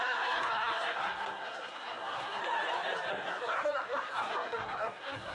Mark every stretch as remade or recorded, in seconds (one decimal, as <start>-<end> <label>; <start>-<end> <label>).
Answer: 0.0-2.4 remade; 2.4-3.1 recorded; 3.1-5.3 remade

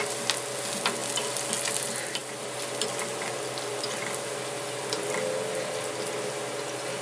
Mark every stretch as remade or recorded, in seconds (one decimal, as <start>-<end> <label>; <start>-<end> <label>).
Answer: 0.0-7.0 recorded